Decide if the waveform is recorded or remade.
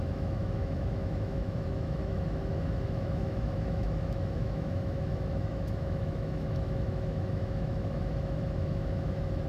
remade